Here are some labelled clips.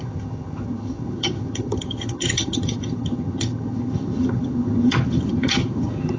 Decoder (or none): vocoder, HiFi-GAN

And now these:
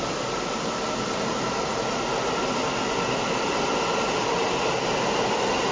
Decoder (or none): none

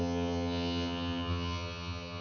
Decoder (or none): vocoder, HiFi-GAN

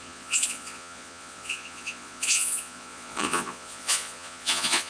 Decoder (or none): vocoder, Vocos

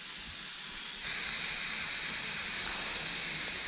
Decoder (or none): none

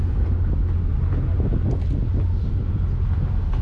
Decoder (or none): none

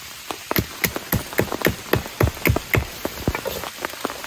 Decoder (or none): none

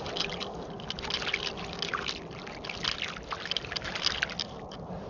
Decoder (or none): none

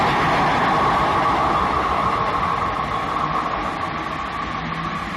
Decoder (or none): none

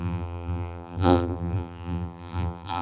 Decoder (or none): vocoder, BigVGAN v2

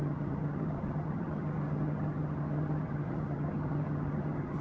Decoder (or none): vocoder, HiFi-GAN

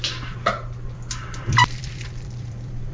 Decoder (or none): vocoder, BigVGAN v2